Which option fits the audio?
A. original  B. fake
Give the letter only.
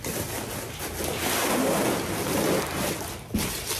A